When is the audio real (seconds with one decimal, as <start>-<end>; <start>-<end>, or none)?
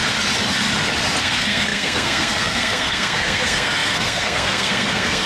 0.0-1.2